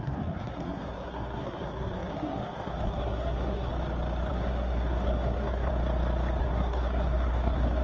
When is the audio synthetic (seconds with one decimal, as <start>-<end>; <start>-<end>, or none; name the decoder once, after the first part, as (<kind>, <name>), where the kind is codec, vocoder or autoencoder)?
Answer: 0.0-3.7 (codec, SNAC); 4.3-5.7; 6.4-7.8